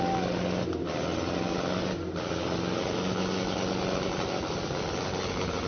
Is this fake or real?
real